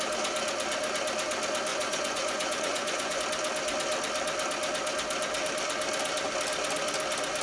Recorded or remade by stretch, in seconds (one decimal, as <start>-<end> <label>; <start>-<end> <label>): 0.0-1.7 recorded; 1.7-3.2 remade; 3.2-7.4 recorded